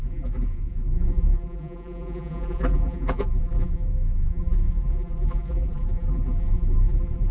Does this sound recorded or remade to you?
remade